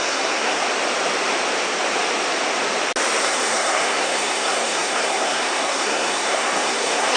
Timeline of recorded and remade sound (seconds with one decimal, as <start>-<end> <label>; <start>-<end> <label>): 0.0-0.6 remade; 0.6-3.2 recorded; 3.2-7.2 remade